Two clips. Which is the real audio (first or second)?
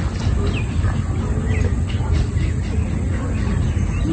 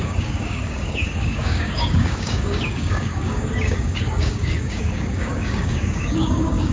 first